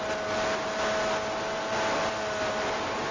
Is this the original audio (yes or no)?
yes